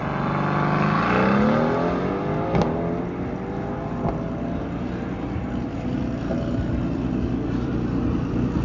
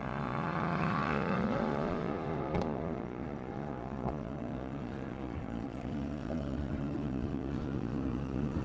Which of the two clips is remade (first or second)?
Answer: second